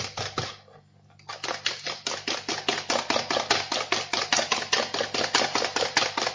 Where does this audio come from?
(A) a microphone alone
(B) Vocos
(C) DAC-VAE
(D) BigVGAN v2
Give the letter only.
A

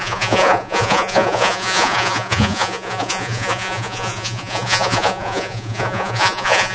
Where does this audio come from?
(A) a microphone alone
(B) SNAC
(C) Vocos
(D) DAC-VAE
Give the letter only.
C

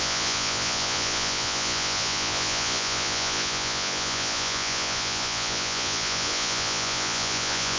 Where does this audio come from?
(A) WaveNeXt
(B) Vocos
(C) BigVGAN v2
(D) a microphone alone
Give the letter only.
B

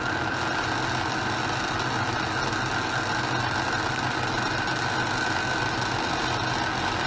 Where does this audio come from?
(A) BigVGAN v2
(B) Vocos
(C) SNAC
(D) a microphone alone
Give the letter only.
D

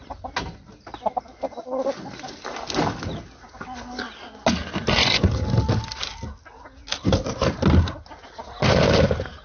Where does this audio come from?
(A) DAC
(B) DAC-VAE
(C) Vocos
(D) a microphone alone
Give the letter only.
D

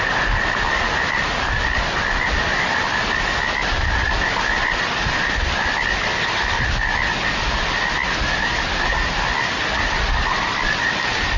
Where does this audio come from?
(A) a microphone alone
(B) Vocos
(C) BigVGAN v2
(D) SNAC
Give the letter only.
A